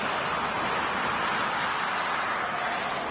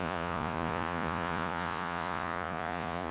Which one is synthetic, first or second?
second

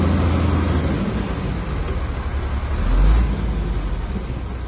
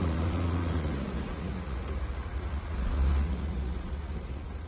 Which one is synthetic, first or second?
second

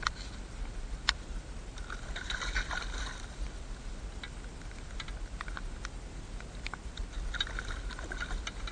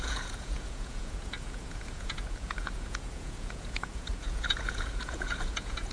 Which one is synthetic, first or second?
second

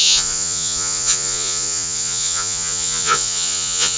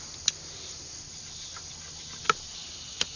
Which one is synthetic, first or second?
first